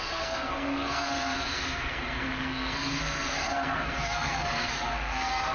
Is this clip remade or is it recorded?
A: remade